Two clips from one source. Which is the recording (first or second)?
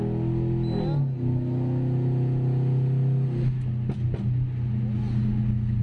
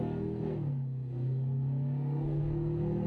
first